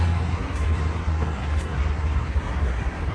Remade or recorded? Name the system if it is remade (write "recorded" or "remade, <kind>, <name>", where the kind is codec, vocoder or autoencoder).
remade, codec, SNAC